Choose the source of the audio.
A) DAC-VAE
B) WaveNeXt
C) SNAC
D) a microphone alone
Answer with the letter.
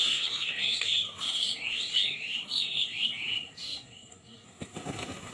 C